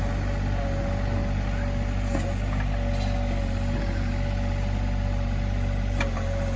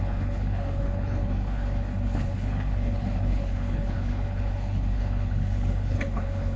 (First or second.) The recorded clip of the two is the first